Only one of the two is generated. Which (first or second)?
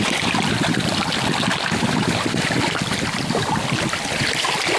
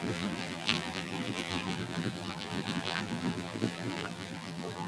second